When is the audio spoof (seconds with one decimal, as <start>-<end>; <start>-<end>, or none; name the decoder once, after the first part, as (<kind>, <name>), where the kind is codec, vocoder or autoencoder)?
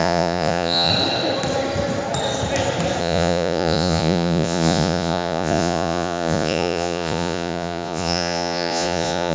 0.0-0.9 (vocoder, Vocos); 3.0-9.3